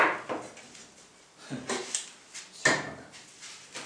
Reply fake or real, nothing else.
real